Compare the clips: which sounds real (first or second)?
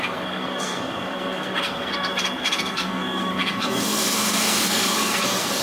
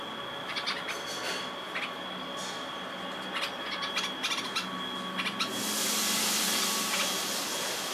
second